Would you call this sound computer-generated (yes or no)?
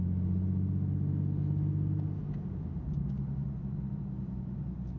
no